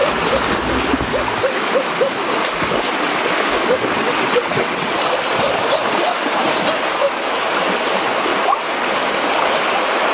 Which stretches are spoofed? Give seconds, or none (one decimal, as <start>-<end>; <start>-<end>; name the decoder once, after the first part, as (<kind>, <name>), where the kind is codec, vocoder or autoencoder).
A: 4.0-4.9 (vocoder, WaveNeXt)